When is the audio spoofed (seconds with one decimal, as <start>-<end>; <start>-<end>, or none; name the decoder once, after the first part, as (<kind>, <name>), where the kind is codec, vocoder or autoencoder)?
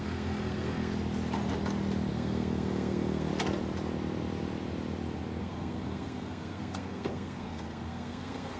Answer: 0.0-0.9 (codec, SNAC); 2.1-3.3; 5.4-8.6